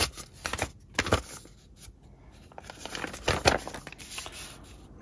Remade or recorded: recorded